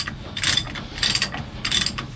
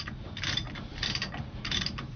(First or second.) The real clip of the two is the first